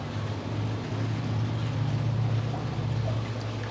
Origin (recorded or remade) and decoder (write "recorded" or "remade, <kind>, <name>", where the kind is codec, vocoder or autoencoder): recorded